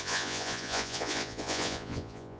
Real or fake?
fake